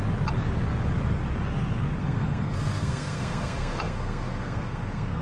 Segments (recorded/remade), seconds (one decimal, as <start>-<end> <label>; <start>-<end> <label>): 0.0-2.0 recorded; 2.0-5.2 remade